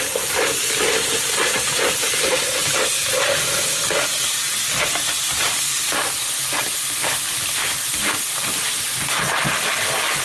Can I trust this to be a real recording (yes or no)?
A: yes